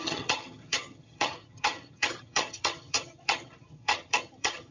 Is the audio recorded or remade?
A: remade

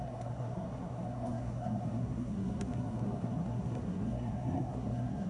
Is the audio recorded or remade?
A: remade